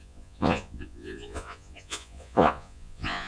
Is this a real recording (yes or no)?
no